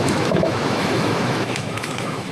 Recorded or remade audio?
remade